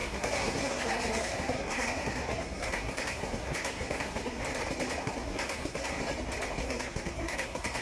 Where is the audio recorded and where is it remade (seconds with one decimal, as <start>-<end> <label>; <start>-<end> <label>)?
0.0-4.4 remade; 4.4-5.0 recorded; 5.0-6.0 remade; 6.0-6.6 recorded; 6.6-7.8 remade